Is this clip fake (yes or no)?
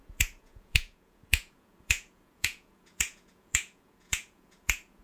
yes